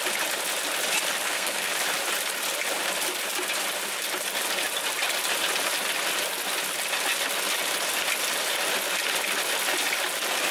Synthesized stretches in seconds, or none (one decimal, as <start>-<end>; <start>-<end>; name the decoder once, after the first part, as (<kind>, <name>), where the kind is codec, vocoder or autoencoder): 1.2-1.7 (codec, SNAC)